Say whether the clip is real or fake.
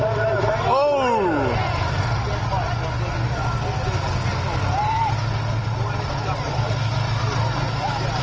real